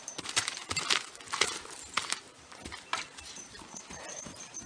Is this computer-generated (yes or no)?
no